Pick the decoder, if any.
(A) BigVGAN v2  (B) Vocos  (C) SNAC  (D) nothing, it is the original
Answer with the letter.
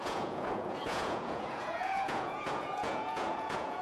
B